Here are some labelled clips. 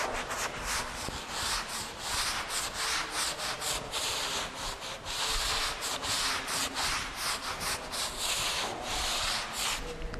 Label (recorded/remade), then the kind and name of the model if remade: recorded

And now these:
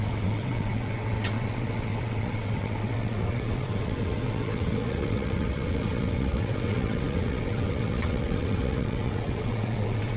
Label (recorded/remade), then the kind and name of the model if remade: remade, vocoder, WaveNeXt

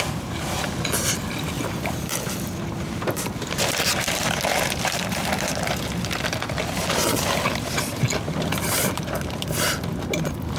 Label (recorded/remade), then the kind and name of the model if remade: recorded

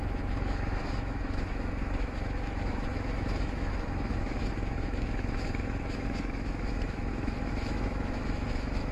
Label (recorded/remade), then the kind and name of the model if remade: remade, autoencoder, DAC-VAE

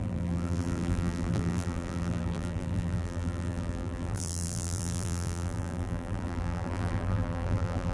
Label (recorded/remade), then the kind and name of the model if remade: remade, vocoder, BigVGAN v2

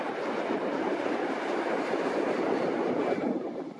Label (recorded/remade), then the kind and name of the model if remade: recorded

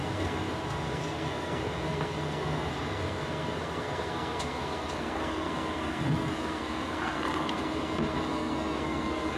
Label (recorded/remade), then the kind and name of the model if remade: remade, codec, SNAC